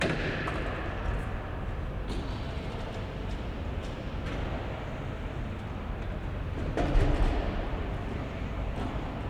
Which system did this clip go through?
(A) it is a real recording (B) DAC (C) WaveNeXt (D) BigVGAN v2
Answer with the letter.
D